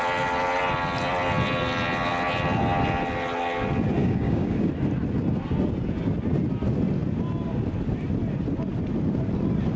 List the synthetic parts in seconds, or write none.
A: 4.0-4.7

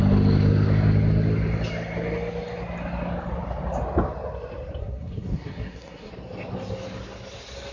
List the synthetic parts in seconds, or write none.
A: 4.8-6.1

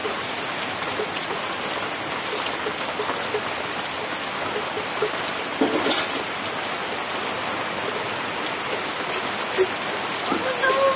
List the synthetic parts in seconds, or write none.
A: 0.0-0.5; 0.9-1.6

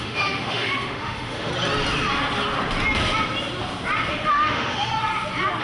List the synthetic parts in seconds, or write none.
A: 0.0-1.5; 4.1-4.9

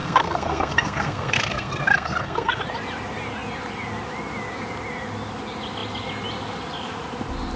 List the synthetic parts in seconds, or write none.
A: 0.0-2.6